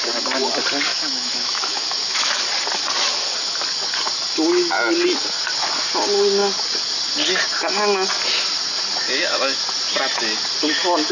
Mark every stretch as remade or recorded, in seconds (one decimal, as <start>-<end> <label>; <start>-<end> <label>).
0.0-0.9 recorded; 0.9-2.4 remade; 2.4-11.1 recorded